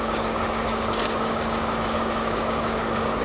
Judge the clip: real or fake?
fake